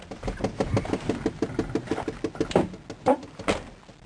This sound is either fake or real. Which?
real